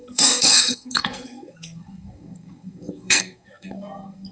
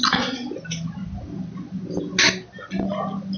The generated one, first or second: first